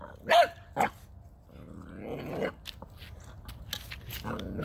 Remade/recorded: recorded